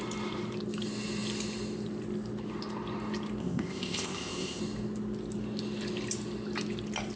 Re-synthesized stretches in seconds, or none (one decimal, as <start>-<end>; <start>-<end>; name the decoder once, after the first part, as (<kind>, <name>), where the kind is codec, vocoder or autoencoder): 3.4-4.6 (codec, ZipCodec)